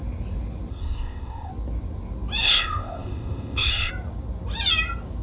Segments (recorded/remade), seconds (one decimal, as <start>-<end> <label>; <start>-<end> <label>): 0.0-0.7 recorded; 0.7-1.5 remade; 1.5-2.4 recorded; 2.4-3.9 remade; 3.9-5.2 recorded